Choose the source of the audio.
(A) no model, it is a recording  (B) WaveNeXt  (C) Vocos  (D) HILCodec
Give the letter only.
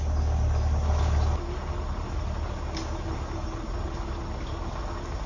A